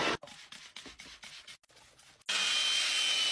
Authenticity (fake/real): real